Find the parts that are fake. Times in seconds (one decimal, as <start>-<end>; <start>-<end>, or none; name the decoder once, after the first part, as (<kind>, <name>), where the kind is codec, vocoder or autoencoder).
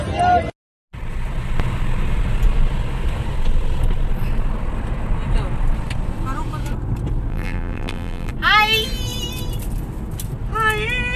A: 7.3-8.3 (vocoder, BigVGAN v2)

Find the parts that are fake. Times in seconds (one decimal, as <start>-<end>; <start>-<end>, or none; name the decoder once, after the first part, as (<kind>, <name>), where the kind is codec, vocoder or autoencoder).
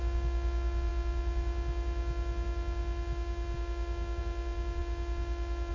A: none